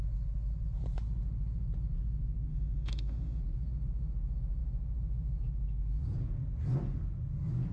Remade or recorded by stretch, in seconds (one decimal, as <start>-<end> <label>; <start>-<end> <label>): 0.0-2.5 recorded; 2.5-3.4 remade; 3.4-7.7 recorded